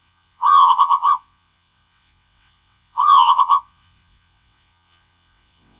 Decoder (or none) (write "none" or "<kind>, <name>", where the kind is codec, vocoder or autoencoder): vocoder, WaveNeXt